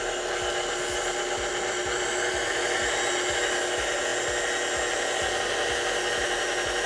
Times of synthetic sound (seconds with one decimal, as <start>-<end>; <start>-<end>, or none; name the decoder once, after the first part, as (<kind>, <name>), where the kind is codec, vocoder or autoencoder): none